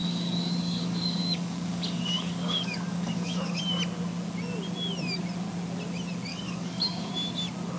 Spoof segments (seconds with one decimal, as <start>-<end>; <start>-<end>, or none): 0.0-3.6; 6.3-7.1